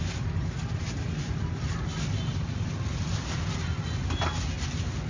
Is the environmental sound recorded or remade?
recorded